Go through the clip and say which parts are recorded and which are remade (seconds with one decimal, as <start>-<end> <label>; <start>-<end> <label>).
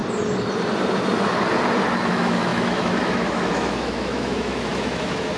0.0-2.1 recorded; 2.1-5.4 remade